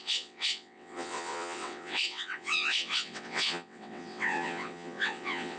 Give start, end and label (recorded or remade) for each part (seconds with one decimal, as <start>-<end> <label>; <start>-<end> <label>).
0.0-5.6 remade